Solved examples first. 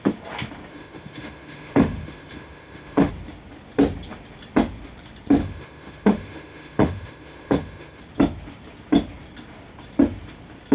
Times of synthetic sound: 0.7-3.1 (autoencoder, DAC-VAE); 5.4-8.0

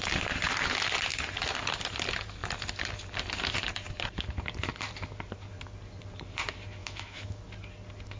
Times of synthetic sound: 6.8-7.4 (autoencoder, DAC-VAE)

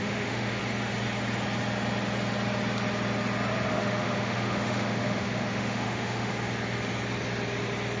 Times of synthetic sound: 0.0-0.6 (autoencoder, DAC-VAE); 3.7-6.3

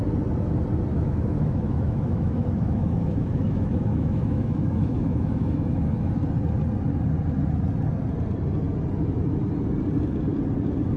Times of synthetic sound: 0.9-6.1 (autoencoder, DAC-VAE)

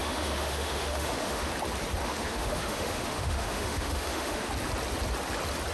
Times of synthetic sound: 0.0-1.5 (autoencoder, DAC-VAE); 2.0-4.5

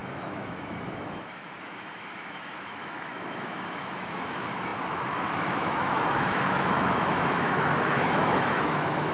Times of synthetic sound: 0.0-9.1 (autoencoder, DAC-VAE)